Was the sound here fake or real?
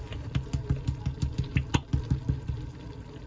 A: real